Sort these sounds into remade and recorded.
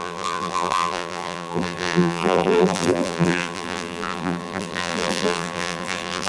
remade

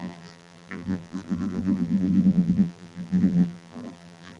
remade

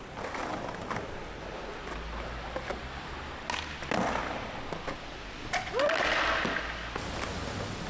recorded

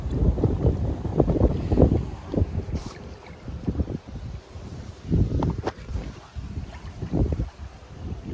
remade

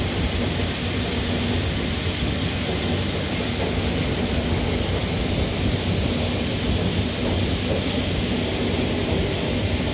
recorded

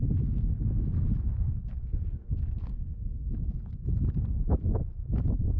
recorded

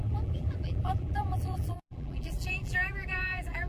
remade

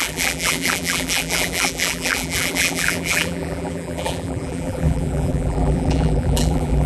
remade